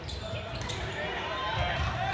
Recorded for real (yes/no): yes